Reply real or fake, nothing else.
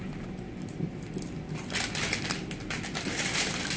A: fake